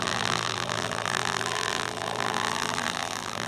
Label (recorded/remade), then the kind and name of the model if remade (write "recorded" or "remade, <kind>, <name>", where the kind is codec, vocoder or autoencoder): remade, vocoder, BigVGAN v2